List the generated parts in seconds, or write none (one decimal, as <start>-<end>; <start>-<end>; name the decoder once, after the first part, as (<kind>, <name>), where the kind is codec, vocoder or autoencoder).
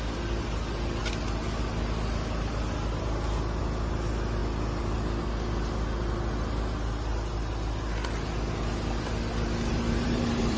9.7-10.6 (vocoder, BigVGAN v2)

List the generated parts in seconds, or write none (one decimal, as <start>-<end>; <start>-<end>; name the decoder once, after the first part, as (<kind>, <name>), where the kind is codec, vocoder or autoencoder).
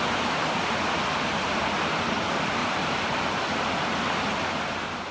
2.6-4.0 (vocoder, BigVGAN v2)